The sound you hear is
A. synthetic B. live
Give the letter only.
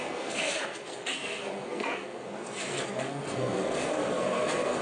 A